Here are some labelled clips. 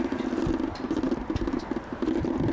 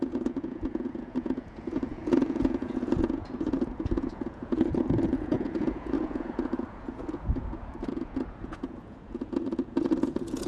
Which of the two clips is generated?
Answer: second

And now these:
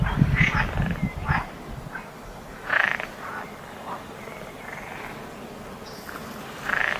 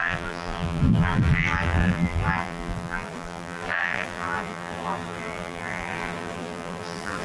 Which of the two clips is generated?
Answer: second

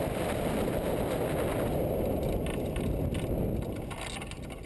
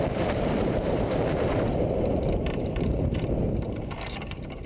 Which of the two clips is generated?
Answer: second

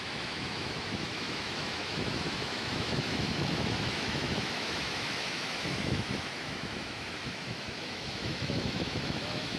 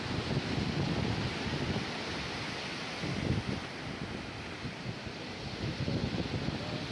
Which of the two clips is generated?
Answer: first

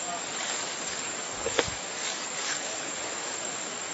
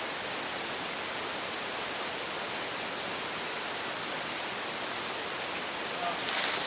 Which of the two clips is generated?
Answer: first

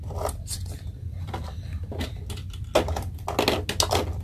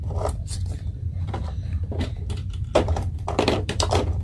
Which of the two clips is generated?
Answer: second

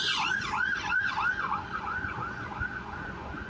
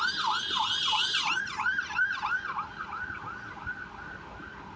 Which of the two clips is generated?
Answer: first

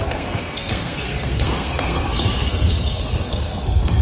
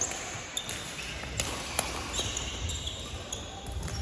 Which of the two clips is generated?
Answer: first